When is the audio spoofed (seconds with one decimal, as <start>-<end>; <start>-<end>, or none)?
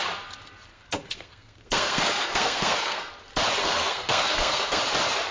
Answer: 0.7-3.1; 3.6-4.8